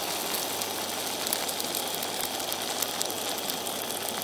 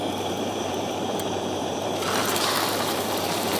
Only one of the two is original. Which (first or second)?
first